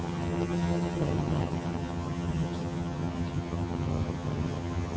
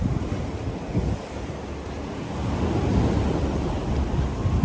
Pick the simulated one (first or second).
first